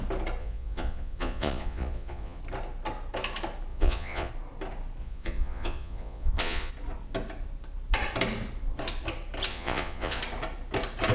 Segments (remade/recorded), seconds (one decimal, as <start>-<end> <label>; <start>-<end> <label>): 0.0-0.4 recorded; 0.4-2.4 remade; 2.4-3.7 recorded; 3.7-4.3 remade; 4.3-5.0 recorded; 5.0-6.7 remade; 6.7-9.5 recorded; 9.5-10.2 remade; 10.2-11.1 recorded